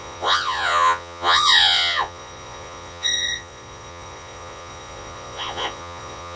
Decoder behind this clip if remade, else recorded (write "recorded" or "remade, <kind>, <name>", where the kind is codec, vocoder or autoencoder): remade, vocoder, Vocos